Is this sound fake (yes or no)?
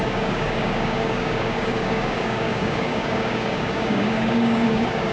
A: yes